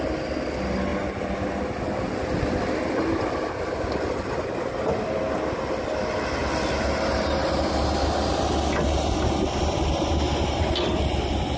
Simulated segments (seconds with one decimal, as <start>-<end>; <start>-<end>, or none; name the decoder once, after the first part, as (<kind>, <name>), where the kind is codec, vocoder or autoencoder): none

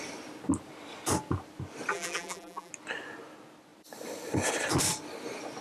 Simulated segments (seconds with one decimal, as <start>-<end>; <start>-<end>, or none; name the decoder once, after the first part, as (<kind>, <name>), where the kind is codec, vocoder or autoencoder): 1.9-2.7 (vocoder, BigVGAN v2)

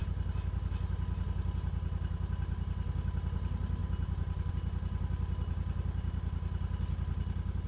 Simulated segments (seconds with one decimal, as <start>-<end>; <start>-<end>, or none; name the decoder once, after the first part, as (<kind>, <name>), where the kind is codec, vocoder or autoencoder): 3.8-4.5 (vocoder, BigVGAN v2)